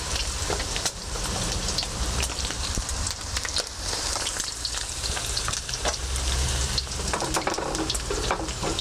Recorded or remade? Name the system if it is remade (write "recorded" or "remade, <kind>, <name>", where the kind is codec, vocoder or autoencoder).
remade, vocoder, BigVGAN v2